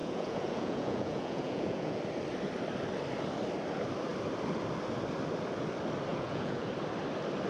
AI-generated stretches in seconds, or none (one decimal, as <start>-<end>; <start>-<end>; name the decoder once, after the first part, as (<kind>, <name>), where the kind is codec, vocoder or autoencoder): 0.0-2.0 (vocoder, Vocos); 6.1-6.7